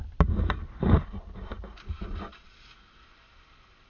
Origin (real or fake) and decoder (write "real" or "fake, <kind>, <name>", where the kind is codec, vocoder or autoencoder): real